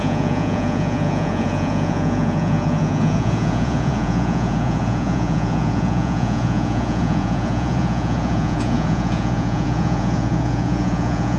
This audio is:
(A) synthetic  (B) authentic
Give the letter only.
A